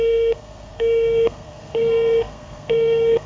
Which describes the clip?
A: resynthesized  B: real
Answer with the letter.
A